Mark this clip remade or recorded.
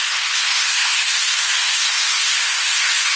remade